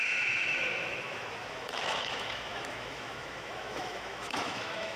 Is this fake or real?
fake